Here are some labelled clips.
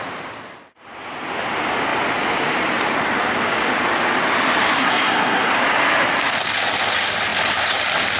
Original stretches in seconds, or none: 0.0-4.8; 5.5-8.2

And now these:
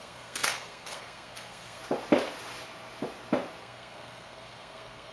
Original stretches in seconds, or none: 1.8-3.6

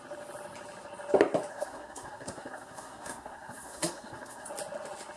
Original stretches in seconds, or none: 0.0-1.5; 4.5-5.2

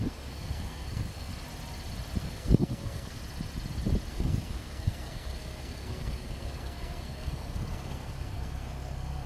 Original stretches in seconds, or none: 1.3-2.2; 3.2-4.1

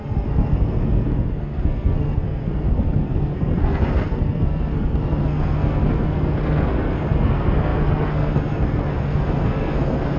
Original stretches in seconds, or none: none

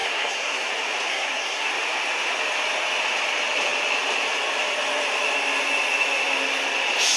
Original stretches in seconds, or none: 0.7-1.1; 1.7-7.2

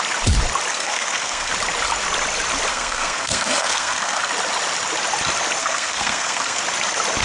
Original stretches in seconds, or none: 0.0-0.7; 1.5-2.7; 4.3-5.6; 6.6-7.2